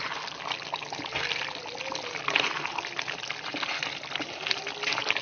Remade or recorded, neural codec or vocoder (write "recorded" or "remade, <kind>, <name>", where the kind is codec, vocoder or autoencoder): recorded